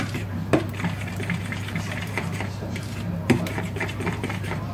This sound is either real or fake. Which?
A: fake